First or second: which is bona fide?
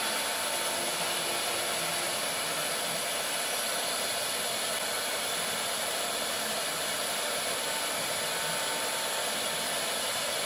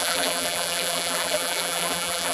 first